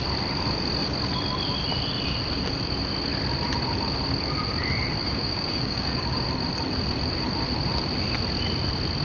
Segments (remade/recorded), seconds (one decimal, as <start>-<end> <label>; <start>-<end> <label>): 0.0-5.0 recorded; 5.0-6.2 remade; 6.2-9.0 recorded